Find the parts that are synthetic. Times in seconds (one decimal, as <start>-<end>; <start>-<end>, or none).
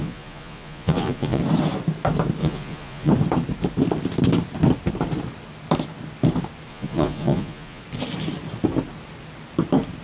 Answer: 0.0-1.4; 2.4-3.1; 6.7-7.8